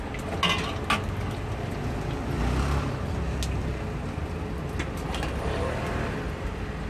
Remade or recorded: recorded